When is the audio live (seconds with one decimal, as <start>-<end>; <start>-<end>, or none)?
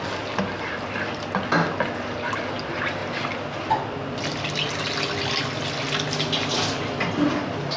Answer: 0.0-7.8